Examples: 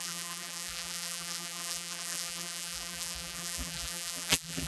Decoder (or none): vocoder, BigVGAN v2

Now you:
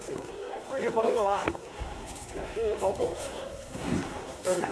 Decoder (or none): codec, SNAC